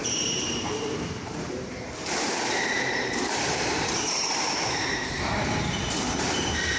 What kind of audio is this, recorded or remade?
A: remade